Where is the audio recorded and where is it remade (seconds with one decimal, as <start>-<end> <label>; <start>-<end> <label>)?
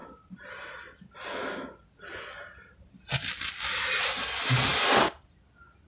0.0-5.9 recorded